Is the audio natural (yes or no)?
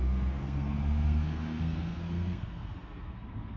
no